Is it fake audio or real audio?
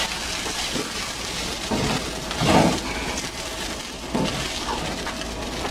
real